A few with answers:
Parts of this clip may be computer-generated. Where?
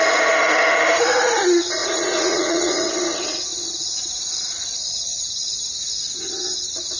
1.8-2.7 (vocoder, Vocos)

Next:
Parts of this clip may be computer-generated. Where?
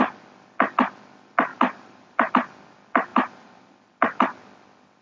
1.5-2.3 (vocoder, BigVGAN v2); 3.1-3.7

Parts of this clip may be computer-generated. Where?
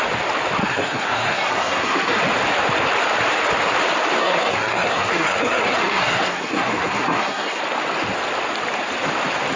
0.6-2.2 (codec, SNAC); 4.2-7.6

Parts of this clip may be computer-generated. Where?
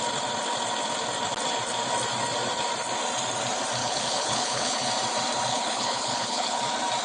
3.8-4.9 (codec, HILCodec); 5.5-6.6